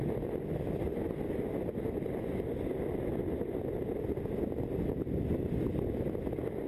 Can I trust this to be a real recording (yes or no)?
yes